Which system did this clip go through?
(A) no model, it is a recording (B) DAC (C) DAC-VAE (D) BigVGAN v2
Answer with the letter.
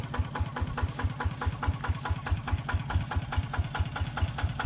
A